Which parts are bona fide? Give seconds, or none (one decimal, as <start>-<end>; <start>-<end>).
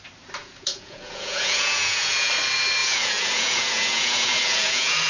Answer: 0.0-0.4; 2.3-2.8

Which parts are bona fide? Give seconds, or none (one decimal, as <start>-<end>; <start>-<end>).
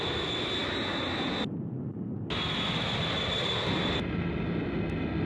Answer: 0.0-5.3